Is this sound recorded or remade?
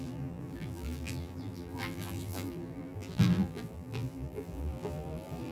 remade